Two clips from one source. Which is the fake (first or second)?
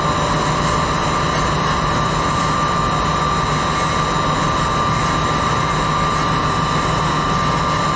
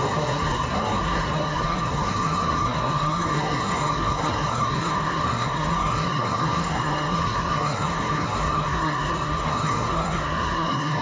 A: second